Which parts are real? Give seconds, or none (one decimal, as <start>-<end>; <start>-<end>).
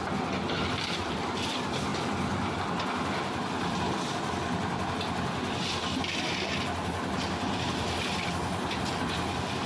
0.0-9.7